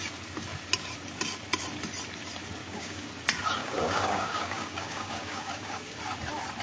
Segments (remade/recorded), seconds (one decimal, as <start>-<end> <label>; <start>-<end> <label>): 0.0-2.6 recorded; 2.6-3.1 remade; 3.1-3.6 recorded; 3.6-6.0 remade; 6.0-6.6 recorded